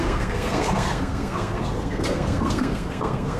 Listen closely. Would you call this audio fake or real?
fake